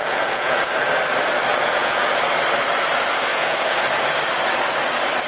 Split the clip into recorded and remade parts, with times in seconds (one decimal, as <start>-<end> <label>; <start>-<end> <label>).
0.0-0.8 remade; 0.8-1.5 recorded; 1.5-2.2 remade; 2.2-3.3 recorded; 3.3-3.8 remade; 3.8-5.3 recorded